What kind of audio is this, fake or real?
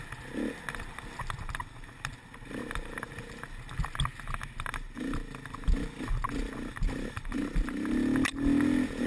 real